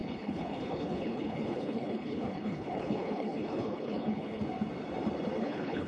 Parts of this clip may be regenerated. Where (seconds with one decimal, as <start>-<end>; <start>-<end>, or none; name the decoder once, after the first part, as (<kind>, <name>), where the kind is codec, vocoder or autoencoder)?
0.0-4.4 (codec, HILCodec); 5.4-5.9